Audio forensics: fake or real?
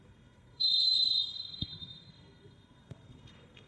fake